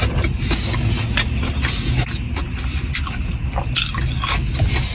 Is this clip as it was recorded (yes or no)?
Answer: yes